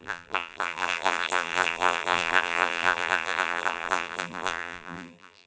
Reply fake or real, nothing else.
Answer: fake